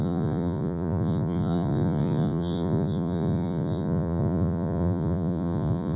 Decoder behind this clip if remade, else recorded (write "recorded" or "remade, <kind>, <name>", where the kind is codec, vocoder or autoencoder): remade, vocoder, Vocos